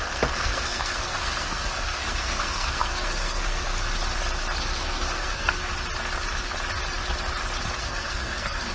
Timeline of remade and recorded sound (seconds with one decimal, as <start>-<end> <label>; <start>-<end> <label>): 0.0-3.7 remade; 3.7-4.6 recorded; 4.6-5.7 remade; 5.7-7.8 recorded; 7.8-8.7 remade